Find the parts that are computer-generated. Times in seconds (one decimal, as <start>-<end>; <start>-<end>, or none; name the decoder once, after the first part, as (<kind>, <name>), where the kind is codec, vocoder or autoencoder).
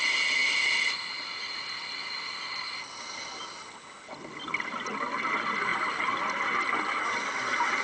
none